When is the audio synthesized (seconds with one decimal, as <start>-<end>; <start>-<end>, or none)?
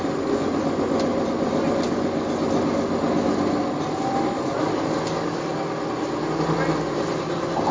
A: none